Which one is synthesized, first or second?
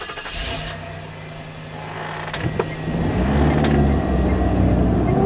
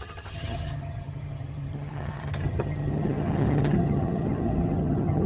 second